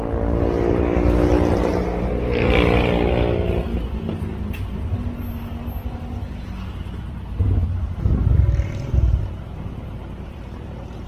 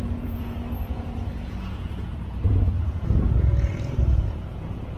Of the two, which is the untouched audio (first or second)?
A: first